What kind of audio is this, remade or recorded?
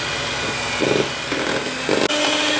recorded